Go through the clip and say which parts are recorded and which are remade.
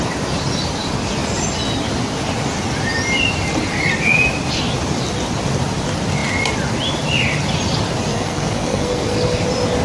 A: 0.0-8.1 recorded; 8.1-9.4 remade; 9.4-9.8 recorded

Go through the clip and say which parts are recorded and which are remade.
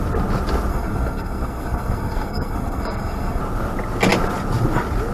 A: 0.0-0.7 recorded; 0.7-3.4 remade; 3.4-5.1 recorded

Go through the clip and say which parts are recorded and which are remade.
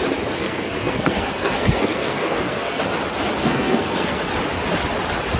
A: 0.0-0.4 recorded; 0.4-2.8 remade; 2.8-3.4 recorded; 3.4-4.2 remade; 4.2-5.4 recorded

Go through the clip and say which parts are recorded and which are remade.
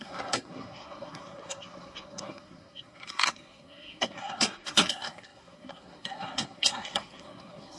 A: 0.0-7.8 remade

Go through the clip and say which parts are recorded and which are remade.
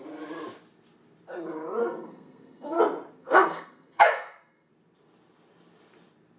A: 0.0-1.8 recorded; 1.8-2.8 remade; 2.8-3.2 recorded; 3.2-4.7 remade; 4.7-6.4 recorded